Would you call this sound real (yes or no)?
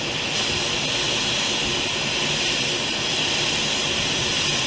yes